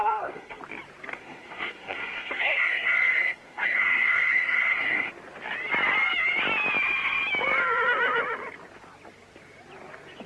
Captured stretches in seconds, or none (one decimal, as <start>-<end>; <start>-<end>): 0.6-1.1; 5.1-10.3